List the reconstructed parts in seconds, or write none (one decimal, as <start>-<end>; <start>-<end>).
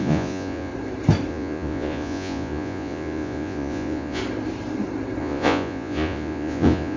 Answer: 0.0-0.7; 1.3-4.2; 5.2-7.0